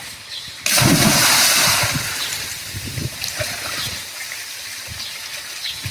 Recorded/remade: recorded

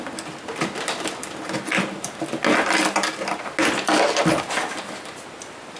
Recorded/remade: recorded